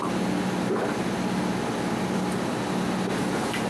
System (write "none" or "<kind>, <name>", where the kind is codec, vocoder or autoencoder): none